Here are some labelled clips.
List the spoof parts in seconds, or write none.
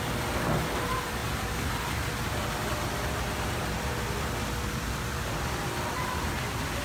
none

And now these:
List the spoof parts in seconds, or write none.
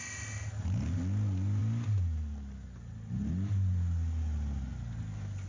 none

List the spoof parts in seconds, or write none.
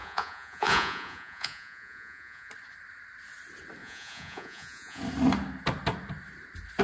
0.0-2.5 (vocoder, Vocos); 3.8-5.0